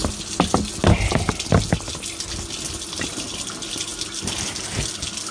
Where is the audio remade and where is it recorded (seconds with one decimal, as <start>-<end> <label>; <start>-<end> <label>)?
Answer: 0.0-5.3 recorded